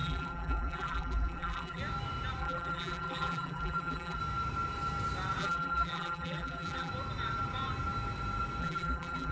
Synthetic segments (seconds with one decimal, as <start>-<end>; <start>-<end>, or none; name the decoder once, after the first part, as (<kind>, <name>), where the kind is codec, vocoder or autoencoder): 0.0-1.8 (vocoder, BigVGAN v2); 2.4-4.2; 5.4-6.9; 8.6-9.3